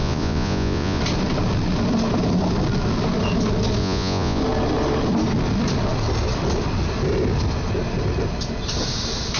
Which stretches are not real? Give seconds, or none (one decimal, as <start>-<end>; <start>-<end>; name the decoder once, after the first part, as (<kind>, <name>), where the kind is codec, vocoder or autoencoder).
0.0-1.0 (vocoder, Vocos); 3.8-4.4